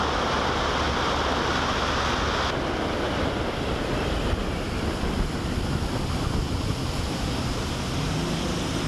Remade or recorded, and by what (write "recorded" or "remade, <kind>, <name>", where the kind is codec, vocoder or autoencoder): recorded